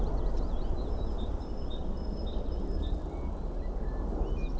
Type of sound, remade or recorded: recorded